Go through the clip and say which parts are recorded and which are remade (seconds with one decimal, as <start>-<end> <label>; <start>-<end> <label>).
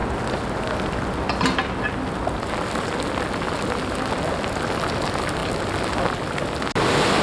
0.0-7.2 recorded